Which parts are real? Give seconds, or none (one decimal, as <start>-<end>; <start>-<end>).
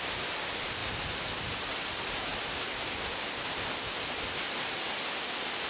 0.0-5.7